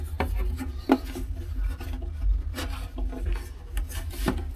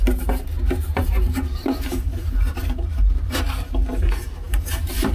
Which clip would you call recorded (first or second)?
first